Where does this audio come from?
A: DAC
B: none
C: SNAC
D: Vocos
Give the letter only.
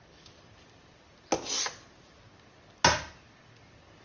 B